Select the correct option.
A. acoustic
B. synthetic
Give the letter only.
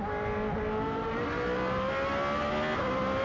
A